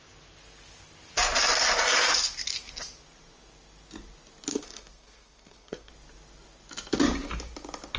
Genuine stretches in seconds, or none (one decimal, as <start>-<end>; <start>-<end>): 0.0-4.5; 5.9-8.0